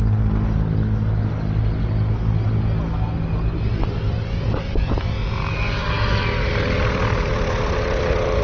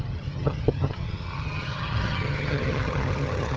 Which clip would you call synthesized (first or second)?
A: second